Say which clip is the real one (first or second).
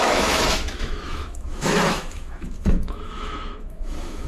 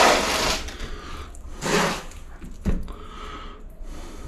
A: second